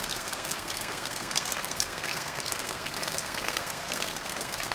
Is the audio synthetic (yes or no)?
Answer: yes